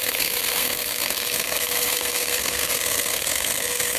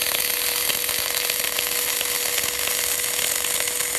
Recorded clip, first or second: second